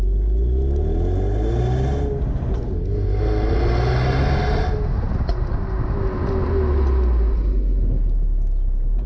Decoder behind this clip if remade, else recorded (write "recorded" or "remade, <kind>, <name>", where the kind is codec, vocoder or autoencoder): recorded